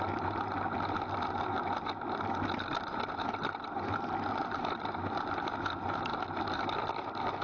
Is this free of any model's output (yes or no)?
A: yes